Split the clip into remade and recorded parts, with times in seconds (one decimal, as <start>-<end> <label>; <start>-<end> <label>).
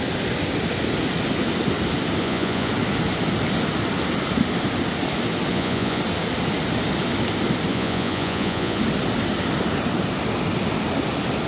0.0-2.2 recorded; 2.2-2.7 remade; 2.7-5.5 recorded; 5.5-6.0 remade; 6.0-7.7 recorded; 7.7-8.8 remade; 8.8-11.5 recorded